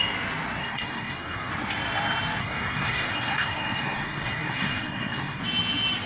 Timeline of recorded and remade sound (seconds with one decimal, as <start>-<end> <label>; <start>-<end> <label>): 0.0-0.6 recorded; 0.6-1.5 remade; 1.5-2.4 recorded; 2.4-5.4 remade; 5.4-6.1 recorded